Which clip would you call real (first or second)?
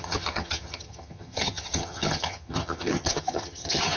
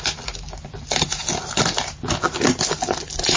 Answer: second